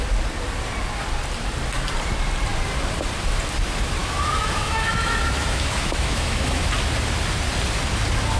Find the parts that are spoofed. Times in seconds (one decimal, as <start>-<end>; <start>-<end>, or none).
4.0-6.6